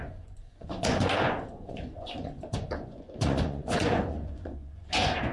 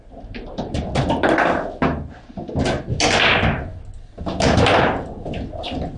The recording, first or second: second